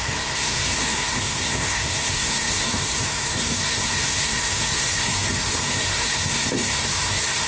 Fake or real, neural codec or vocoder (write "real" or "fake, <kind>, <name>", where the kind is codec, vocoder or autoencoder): fake, codec, SNAC